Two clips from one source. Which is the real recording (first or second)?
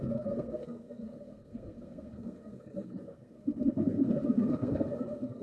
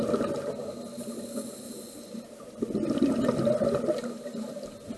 second